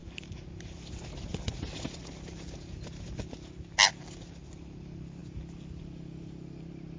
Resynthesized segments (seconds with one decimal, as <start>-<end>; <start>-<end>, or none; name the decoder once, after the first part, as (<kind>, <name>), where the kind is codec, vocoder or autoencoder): none